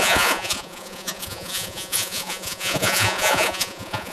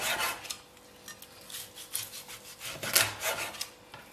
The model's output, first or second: first